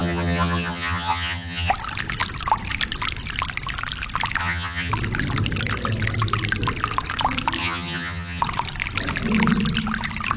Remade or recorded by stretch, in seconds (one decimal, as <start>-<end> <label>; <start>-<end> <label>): 0.0-1.7 remade; 1.7-4.4 recorded; 4.4-4.9 remade; 4.9-7.6 recorded; 7.6-8.4 remade; 8.4-10.4 recorded